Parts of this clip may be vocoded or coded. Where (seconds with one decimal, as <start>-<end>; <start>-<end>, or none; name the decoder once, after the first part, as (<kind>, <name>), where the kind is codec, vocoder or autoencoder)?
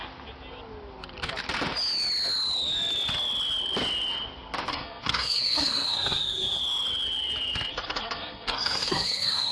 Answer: 4.7-6.6 (codec, SNAC); 7.7-9.5